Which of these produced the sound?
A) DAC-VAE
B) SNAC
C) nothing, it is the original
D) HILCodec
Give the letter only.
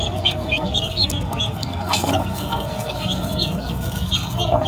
B